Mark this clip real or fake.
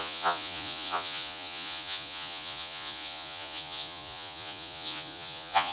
fake